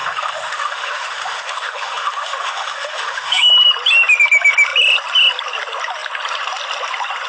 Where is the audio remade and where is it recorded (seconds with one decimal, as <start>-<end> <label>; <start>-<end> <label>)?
0.0-3.5 remade; 3.5-7.3 recorded